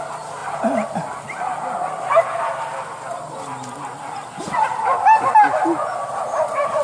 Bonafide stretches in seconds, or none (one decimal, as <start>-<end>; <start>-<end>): 0.0-6.8